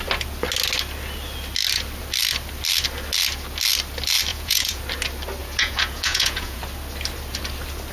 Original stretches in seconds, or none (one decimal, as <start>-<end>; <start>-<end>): 0.0-4.3; 4.8-5.4; 6.6-7.9